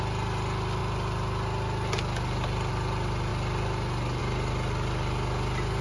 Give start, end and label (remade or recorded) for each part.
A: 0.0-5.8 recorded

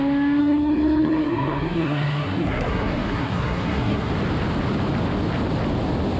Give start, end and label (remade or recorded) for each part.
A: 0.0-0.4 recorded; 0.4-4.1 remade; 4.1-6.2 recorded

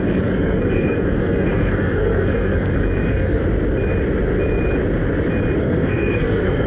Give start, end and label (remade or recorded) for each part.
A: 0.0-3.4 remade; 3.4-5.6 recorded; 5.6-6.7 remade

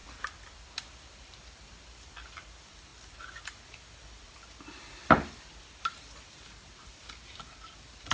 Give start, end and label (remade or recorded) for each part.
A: 0.0-8.1 recorded